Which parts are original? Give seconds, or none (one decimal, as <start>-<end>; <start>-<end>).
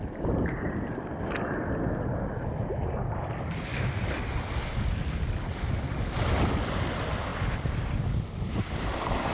0.0-9.3